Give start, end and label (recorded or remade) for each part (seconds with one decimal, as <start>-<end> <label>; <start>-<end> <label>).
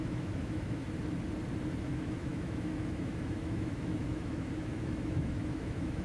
0.0-0.8 remade; 0.8-1.8 recorded; 1.8-6.0 remade